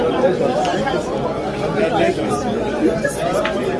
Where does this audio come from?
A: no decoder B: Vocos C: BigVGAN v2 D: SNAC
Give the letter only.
A